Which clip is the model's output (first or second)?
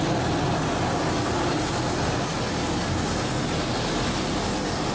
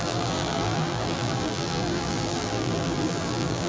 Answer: second